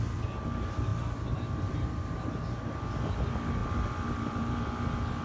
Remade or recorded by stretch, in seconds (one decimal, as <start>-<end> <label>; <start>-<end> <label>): 0.0-3.6 recorded; 3.6-4.5 remade; 4.5-5.2 recorded